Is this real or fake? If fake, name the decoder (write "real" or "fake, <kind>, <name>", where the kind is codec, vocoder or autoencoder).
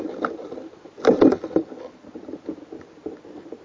real